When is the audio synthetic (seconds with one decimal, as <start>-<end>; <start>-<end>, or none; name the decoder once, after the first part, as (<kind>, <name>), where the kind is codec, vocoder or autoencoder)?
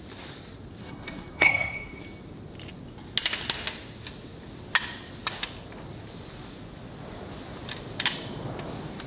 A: 0.8-2.0 (codec, SNAC)